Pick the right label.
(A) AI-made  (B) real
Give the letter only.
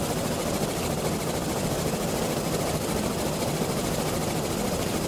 B